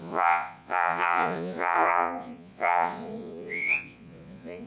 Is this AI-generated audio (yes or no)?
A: yes